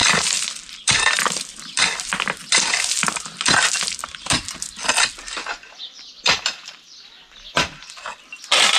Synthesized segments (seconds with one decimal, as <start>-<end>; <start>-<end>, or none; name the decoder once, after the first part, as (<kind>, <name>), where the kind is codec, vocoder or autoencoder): 0.0-4.4 (vocoder, BigVGAN v2); 5.8-6.9